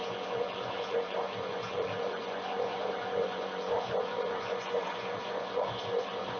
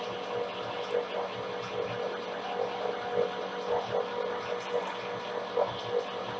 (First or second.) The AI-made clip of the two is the first